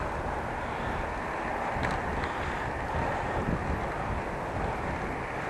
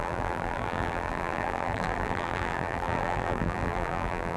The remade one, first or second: second